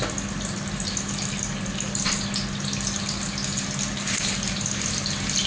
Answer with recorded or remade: recorded